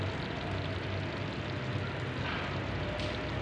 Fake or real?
real